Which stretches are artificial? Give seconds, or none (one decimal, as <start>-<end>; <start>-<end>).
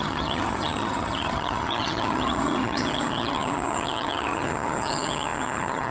0.0-5.9